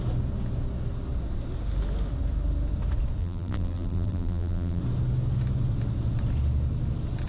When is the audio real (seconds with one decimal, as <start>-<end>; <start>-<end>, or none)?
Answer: 0.0-3.2; 4.8-7.3